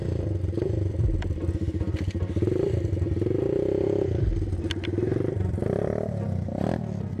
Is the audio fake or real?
fake